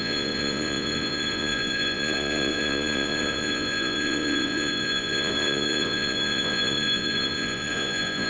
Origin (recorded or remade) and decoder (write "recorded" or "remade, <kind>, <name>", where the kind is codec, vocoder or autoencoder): remade, vocoder, Vocos